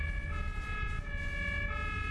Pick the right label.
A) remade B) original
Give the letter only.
B